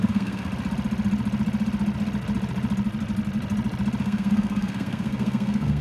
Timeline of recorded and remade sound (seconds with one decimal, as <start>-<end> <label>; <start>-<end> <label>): 0.0-0.5 remade; 0.5-4.0 recorded; 4.0-5.8 remade